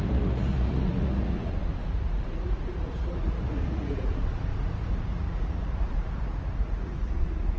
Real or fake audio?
fake